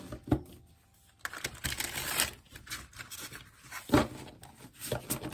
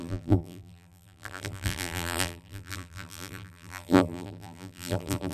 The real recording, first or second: first